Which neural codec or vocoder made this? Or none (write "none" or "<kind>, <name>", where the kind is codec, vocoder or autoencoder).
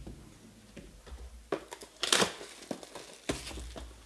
none